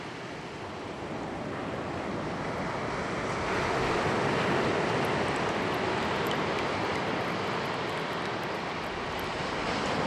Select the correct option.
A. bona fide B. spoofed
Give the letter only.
A